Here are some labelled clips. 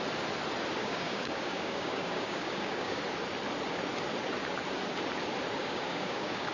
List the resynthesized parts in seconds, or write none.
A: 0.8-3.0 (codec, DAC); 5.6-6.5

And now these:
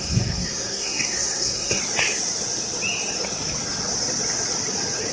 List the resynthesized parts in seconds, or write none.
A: 0.0-1.8 (codec, SNAC)

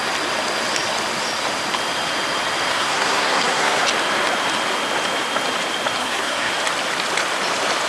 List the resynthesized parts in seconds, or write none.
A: 2.7-3.8 (codec, SNAC); 6.0-6.5